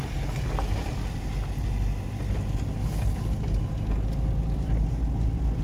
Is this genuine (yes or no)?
yes